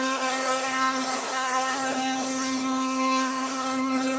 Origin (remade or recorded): remade